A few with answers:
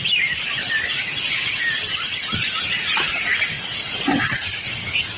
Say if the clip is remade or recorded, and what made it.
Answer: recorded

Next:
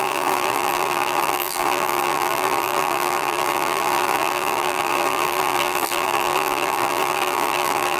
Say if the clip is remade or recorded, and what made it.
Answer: remade, vocoder, BigVGAN v2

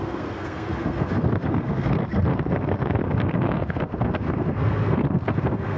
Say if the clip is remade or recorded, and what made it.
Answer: remade, codec, SNAC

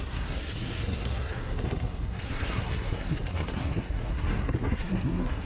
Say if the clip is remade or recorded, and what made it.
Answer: remade, codec, SNAC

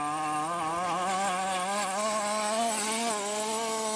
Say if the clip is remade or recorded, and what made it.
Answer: recorded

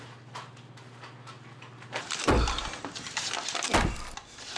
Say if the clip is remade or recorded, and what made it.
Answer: recorded